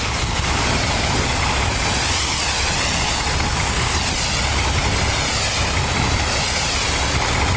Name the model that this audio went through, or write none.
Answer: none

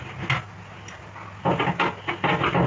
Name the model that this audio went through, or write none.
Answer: none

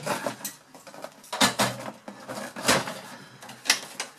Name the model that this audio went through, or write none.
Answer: none